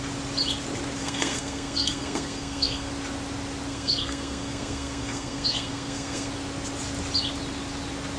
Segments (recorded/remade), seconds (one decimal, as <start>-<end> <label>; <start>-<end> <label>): 0.0-1.0 recorded; 1.0-2.9 remade; 2.9-3.7 recorded; 3.7-6.3 remade; 6.3-8.2 recorded